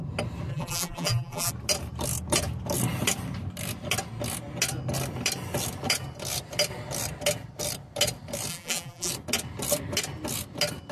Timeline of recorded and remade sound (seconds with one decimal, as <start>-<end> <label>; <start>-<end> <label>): 0.0-0.5 recorded; 0.5-1.5 remade; 1.5-8.5 recorded; 8.5-9.1 remade; 9.1-10.9 recorded